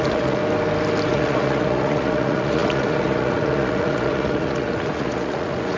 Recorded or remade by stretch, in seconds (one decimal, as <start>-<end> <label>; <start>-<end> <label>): 0.0-0.4 remade; 0.4-1.1 recorded; 1.1-5.8 remade